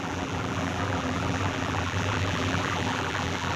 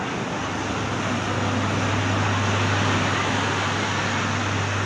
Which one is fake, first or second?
first